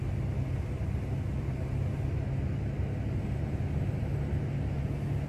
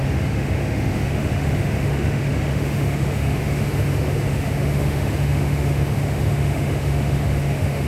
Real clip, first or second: first